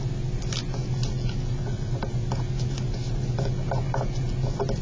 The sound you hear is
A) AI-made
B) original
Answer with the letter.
B